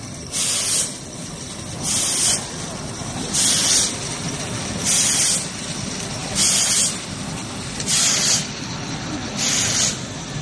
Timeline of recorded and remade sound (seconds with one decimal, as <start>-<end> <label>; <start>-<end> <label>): 0.0-10.4 recorded